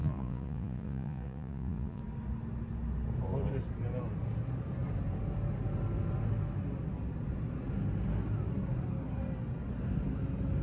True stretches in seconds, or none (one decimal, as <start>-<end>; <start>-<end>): 2.0-10.6